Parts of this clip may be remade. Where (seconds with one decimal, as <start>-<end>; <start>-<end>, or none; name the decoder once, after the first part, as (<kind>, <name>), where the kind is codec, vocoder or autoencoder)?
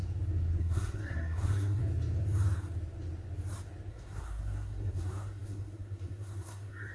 0.6-1.8 (codec, SNAC); 3.9-6.9